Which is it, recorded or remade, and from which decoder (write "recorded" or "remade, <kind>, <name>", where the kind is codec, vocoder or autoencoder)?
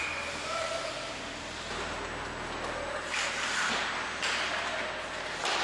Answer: recorded